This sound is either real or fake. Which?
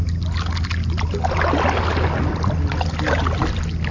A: real